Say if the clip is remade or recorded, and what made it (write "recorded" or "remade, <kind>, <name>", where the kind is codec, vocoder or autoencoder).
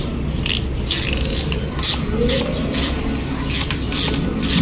recorded